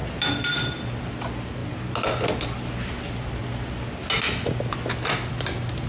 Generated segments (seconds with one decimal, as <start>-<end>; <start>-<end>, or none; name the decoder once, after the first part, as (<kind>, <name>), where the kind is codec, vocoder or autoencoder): none